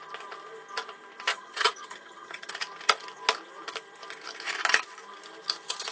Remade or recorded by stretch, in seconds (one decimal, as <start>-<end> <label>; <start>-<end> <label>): 0.0-1.3 recorded; 1.3-2.5 remade; 2.5-5.9 recorded